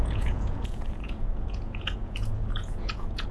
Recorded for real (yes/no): no